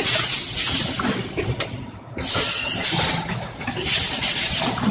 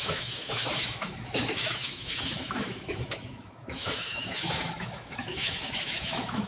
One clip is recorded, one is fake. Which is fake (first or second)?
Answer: second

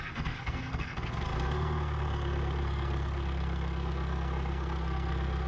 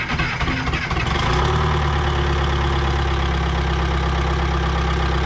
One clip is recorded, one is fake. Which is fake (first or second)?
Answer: first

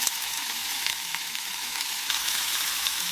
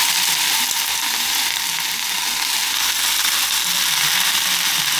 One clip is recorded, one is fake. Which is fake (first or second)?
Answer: first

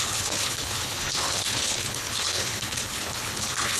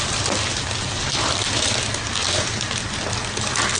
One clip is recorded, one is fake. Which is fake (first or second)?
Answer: first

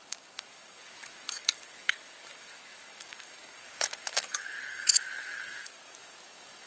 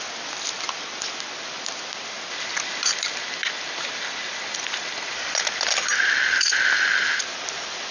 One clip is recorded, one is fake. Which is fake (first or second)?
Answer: first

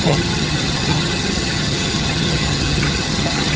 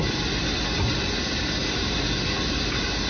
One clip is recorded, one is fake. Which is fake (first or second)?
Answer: first